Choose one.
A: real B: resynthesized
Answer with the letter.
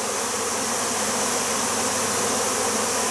A